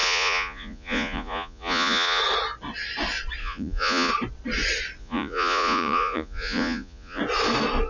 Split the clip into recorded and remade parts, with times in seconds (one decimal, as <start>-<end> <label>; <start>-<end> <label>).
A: 0.0-2.2 remade; 2.2-3.4 recorded; 3.4-4.1 remade; 4.1-5.0 recorded; 5.0-7.2 remade; 7.2-7.9 recorded